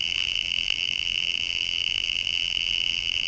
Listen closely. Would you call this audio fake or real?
fake